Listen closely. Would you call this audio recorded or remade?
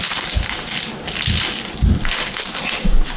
recorded